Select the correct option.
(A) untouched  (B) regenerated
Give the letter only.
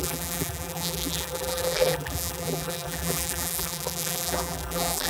B